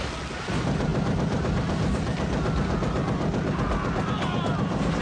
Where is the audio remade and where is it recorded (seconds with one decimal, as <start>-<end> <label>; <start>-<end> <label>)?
0.0-5.0 recorded

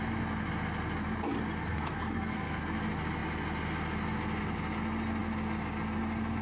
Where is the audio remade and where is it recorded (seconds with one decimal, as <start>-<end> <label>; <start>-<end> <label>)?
0.0-1.7 recorded; 1.7-2.6 remade; 2.6-6.4 recorded

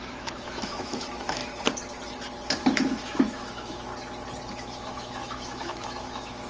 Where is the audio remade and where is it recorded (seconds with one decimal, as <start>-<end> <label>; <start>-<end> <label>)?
0.0-1.4 remade; 1.4-2.6 recorded; 2.6-3.9 remade; 3.9-4.5 recorded; 4.5-6.5 remade

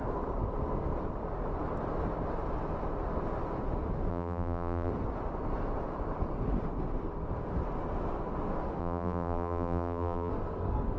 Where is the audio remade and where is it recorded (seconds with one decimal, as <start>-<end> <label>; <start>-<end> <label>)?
0.0-4.1 recorded; 4.1-4.9 remade; 4.9-8.8 recorded; 8.8-10.3 remade; 10.3-11.0 recorded

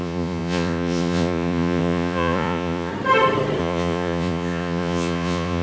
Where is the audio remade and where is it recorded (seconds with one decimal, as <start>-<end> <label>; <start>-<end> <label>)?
0.0-2.9 remade; 2.9-3.6 recorded; 3.6-5.6 remade

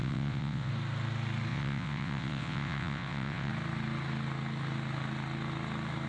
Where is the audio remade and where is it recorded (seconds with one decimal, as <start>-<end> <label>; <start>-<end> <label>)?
0.0-0.7 remade; 0.7-1.5 recorded; 1.5-3.5 remade; 3.5-6.1 recorded

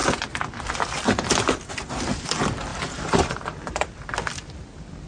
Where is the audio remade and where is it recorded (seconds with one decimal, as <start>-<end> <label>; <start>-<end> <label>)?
0.0-2.7 recorded; 2.7-4.1 remade; 4.1-5.1 recorded

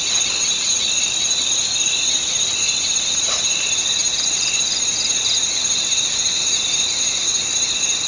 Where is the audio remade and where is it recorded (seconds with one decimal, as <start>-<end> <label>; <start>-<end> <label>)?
0.0-8.1 recorded